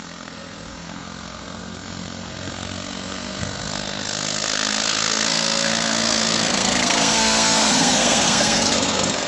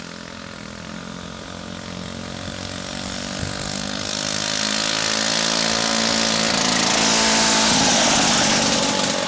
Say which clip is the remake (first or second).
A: first